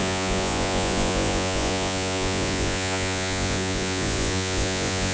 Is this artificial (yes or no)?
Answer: yes